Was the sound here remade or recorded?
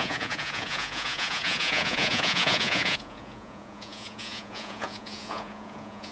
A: remade